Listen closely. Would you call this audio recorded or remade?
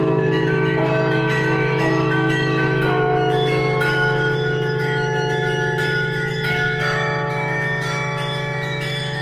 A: remade